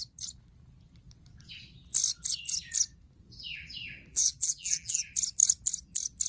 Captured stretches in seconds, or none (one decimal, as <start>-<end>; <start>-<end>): 0.0-4.1; 5.0-6.3